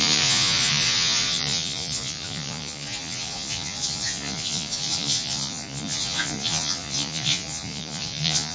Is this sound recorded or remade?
remade